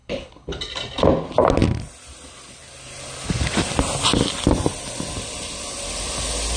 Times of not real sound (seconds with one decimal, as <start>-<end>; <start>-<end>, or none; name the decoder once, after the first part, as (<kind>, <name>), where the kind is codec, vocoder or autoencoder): 0.0-0.6 (codec, HILCodec)